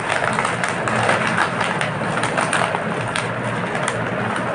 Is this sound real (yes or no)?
yes